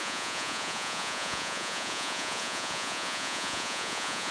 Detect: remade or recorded remade